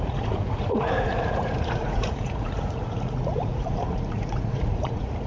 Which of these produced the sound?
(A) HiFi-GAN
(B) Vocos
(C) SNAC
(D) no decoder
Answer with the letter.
B